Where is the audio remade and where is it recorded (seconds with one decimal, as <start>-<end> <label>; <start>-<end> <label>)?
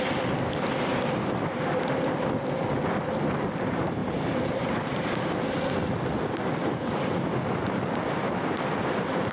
0.0-0.9 recorded; 0.9-2.2 remade; 2.2-4.0 recorded; 4.0-4.8 remade; 4.8-9.3 recorded